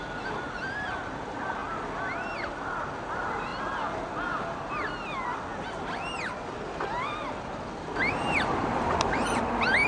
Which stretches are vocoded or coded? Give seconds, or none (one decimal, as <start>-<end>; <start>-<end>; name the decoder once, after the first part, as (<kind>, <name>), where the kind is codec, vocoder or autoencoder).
none